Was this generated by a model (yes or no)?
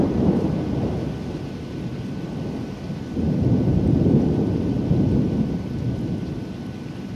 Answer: no